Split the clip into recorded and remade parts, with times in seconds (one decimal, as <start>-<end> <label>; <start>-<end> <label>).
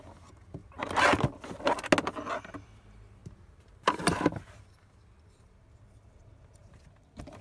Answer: 0.0-3.2 recorded; 3.2-4.7 remade; 4.7-7.4 recorded